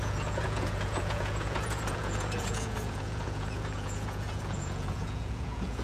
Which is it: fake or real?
fake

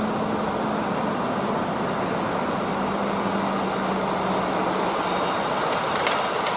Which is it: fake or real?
real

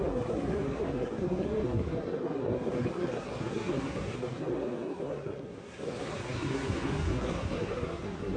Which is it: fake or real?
fake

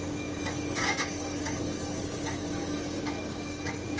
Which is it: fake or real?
fake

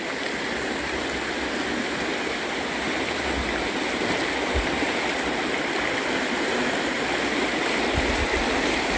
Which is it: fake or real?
real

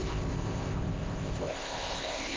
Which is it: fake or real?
fake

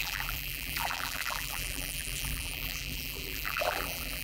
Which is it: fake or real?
fake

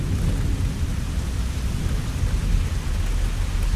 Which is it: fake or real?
real